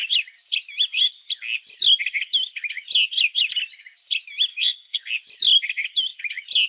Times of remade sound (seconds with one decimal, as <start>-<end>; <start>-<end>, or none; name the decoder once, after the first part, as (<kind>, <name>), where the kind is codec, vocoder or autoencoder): 4.5-5.1 (codec, SNAC)